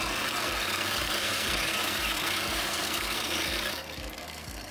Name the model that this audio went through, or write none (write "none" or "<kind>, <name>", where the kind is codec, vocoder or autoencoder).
codec, SNAC